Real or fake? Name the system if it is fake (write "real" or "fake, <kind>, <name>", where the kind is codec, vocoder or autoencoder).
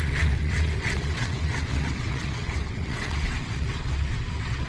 fake, vocoder, WaveNeXt